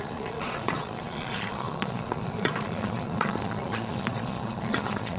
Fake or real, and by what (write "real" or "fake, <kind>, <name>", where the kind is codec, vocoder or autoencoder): fake, vocoder, Vocos